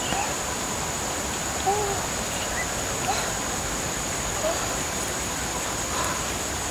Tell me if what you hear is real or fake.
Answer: real